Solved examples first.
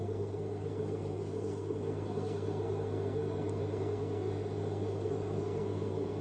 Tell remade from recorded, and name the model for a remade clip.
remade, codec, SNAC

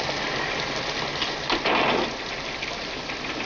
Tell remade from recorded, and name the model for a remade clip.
remade, vocoder, BigVGAN v2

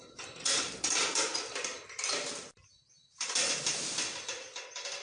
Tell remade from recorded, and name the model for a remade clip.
recorded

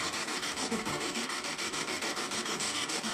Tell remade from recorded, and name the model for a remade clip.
remade, codec, DAC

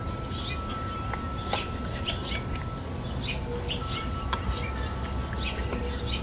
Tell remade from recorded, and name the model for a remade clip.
recorded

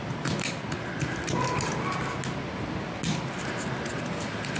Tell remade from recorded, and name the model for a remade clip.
recorded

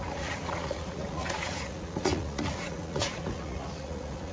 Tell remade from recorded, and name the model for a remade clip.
remade, vocoder, Vocos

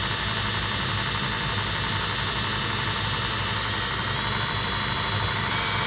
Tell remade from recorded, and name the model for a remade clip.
recorded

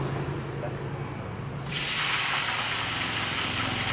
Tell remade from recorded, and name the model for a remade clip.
recorded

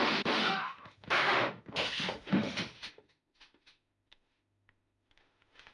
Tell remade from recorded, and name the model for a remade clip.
remade, autoencoder, DAC-VAE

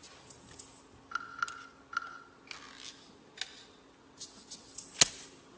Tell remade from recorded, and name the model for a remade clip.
recorded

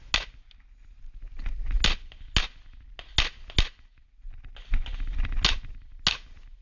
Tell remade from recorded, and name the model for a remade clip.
recorded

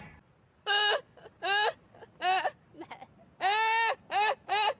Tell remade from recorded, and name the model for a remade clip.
recorded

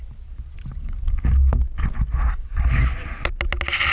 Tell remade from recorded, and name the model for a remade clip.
recorded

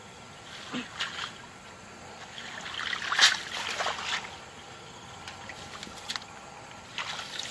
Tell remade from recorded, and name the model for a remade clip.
recorded